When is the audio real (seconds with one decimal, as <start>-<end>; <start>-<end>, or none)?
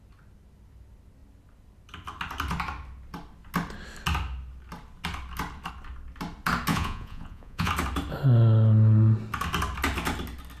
0.0-6.7; 7.7-10.6